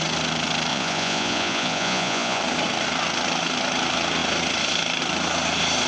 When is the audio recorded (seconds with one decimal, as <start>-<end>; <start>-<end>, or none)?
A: 0.0-0.7; 2.4-5.9